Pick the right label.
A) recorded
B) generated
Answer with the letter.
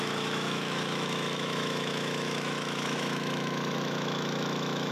B